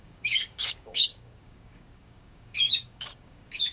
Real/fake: fake